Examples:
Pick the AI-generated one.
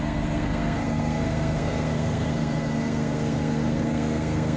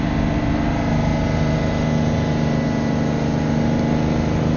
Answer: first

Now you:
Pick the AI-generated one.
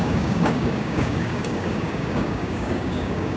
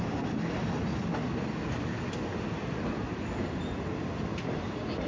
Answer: first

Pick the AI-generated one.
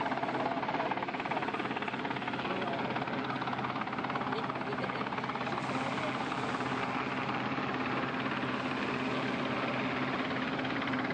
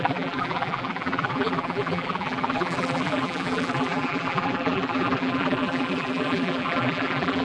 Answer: second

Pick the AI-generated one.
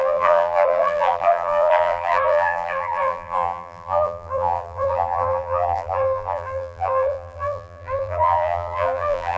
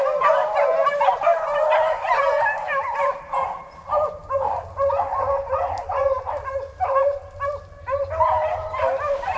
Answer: first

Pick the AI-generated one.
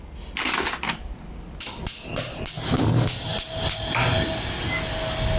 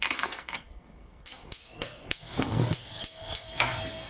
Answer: second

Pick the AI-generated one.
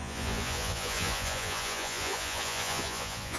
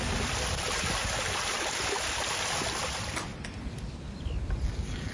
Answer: first